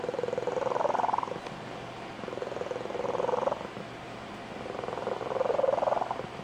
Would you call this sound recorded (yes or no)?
yes